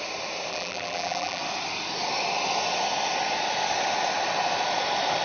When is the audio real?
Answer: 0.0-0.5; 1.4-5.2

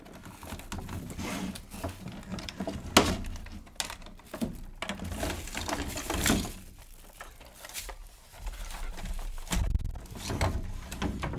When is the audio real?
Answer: 0.0-2.3; 2.9-7.8; 9.4-11.4

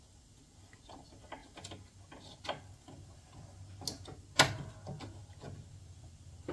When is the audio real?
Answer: 0.0-6.5

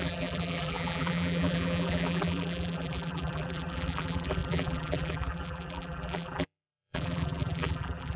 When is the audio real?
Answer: none

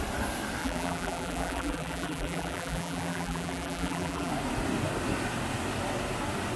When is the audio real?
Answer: 0.0-0.6; 4.3-6.6

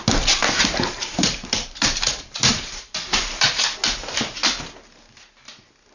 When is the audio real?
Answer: 0.0-0.4; 3.5-5.9

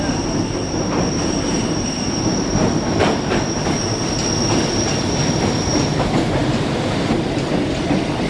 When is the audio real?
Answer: 0.0-0.6; 3.8-6.4; 7.7-8.3

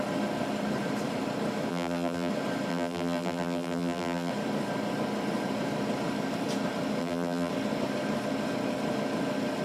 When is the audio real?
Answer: 0.0-1.7; 2.3-2.7; 4.3-7.0; 7.5-9.6